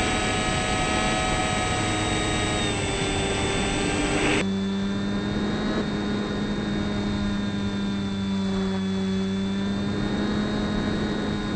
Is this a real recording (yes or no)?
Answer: yes